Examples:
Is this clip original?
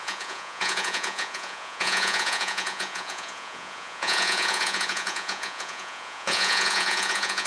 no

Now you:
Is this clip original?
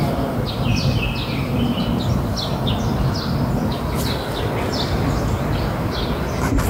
yes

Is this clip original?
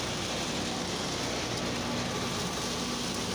yes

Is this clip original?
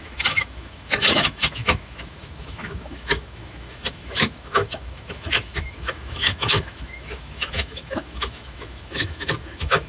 no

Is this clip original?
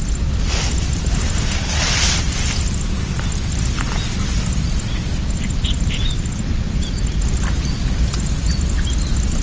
no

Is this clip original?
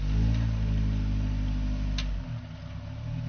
yes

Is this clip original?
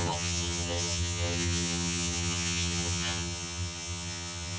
no